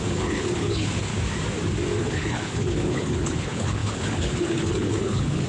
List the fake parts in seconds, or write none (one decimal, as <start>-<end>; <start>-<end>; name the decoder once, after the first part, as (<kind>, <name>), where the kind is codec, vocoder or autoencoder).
0.0-1.1 (codec, HILCodec); 2.0-5.5